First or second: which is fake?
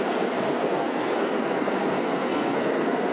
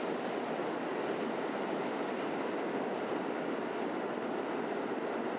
first